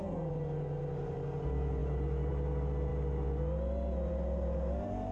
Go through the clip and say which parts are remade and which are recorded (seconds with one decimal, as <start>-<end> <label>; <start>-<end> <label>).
0.0-5.1 recorded